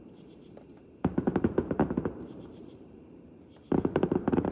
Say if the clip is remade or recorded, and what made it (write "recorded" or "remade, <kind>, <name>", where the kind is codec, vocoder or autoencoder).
remade, vocoder, BigVGAN v2